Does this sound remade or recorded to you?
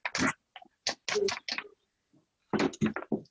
recorded